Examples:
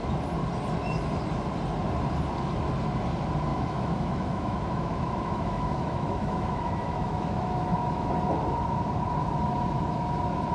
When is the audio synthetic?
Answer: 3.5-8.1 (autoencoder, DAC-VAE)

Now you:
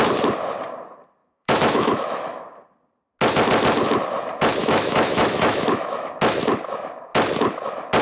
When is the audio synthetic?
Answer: 1.2-2.4 (autoencoder, DAC-VAE); 4.6-6.1